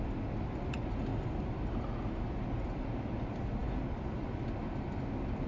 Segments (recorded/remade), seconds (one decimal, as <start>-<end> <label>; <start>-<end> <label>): 0.0-5.5 recorded

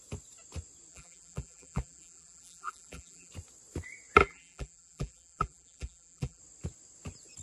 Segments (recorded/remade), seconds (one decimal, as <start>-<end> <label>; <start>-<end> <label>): 0.0-0.9 recorded; 0.9-3.3 remade; 3.3-4.2 recorded; 4.2-6.4 remade; 6.4-7.4 recorded